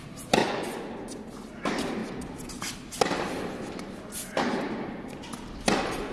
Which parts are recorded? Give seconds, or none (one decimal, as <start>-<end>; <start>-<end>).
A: 0.0-0.4; 0.9-6.1